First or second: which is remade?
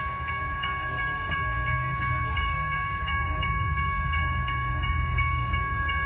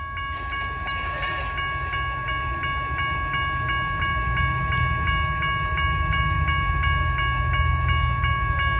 first